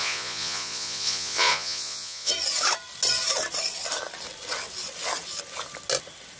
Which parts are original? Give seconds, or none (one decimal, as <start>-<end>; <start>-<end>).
2.3-6.4